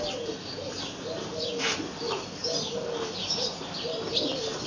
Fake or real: real